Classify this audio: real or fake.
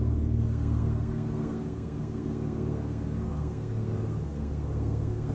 fake